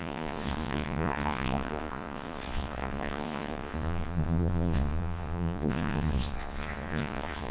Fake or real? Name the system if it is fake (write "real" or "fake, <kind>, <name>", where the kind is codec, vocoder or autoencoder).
fake, vocoder, Vocos